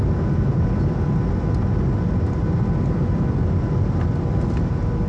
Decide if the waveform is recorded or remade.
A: recorded